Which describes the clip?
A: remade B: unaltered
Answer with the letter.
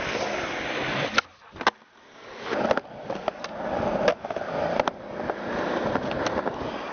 B